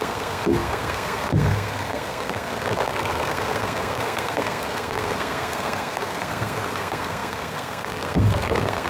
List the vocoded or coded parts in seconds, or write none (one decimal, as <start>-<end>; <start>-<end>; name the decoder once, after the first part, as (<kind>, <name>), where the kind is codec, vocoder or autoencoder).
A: 0.0-8.9 (codec, SNAC)